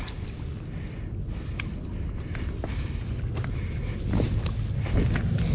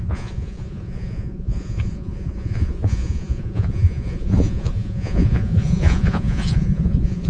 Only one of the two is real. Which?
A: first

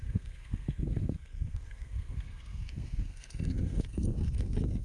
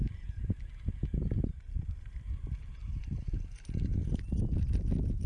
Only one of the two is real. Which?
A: second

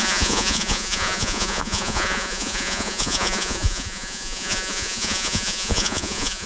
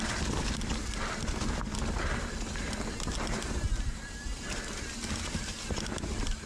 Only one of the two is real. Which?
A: second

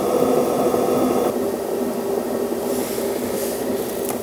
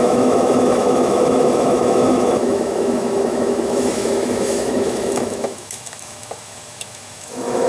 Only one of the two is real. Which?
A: first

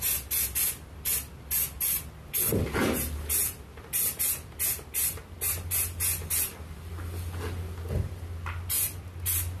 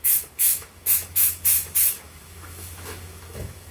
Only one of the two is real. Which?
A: first